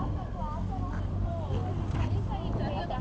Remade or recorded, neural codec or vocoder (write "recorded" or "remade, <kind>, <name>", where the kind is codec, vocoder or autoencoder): recorded